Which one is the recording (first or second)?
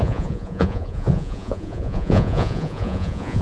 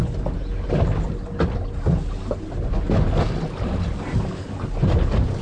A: second